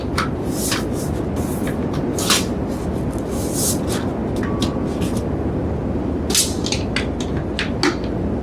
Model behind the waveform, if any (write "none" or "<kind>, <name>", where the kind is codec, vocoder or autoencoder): none